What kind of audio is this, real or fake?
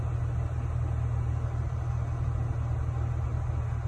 real